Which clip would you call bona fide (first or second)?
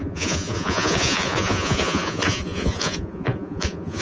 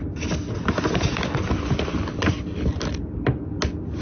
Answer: second